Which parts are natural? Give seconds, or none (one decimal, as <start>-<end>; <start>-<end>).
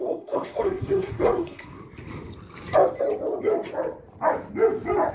1.8-5.1